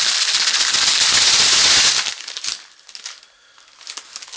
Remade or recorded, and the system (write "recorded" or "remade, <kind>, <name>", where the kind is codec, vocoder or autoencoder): recorded